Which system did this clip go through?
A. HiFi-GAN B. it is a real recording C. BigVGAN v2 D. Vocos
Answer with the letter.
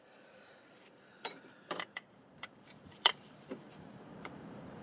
C